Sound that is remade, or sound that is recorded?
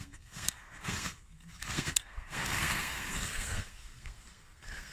remade